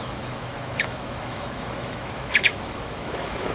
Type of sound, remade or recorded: remade